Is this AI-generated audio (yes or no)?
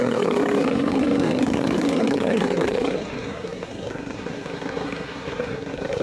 yes